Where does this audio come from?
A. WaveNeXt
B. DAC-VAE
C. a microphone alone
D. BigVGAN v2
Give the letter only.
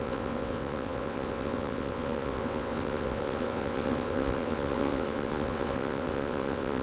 A